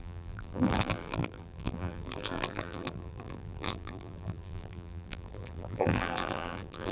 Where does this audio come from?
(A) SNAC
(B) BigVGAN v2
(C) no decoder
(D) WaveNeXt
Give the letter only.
B